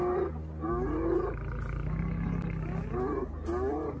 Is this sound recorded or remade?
recorded